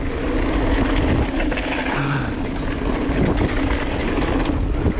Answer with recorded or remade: recorded